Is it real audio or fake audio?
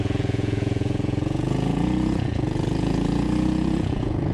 fake